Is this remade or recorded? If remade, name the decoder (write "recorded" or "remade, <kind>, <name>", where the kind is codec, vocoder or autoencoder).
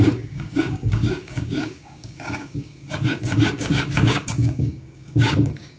remade, codec, DAC